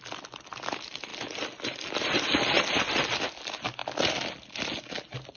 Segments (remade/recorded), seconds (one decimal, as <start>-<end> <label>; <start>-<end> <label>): 0.0-5.4 recorded